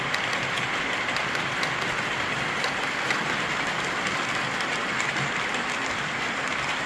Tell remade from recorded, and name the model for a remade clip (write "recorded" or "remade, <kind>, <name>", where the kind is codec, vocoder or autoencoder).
remade, vocoder, BigVGAN v2